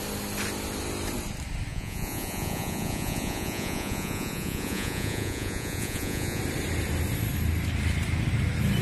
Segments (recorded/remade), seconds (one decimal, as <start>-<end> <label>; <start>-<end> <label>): 0.0-1.7 recorded; 1.7-6.4 remade; 6.4-8.8 recorded